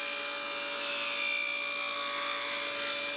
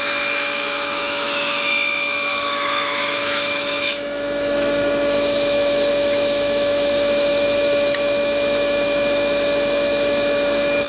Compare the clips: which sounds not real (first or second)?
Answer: second